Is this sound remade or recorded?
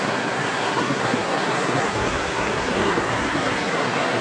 remade